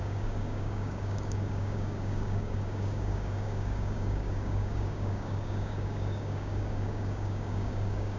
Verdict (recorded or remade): remade